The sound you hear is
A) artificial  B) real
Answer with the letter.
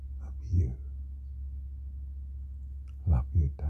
B